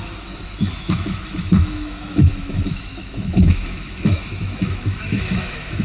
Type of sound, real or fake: fake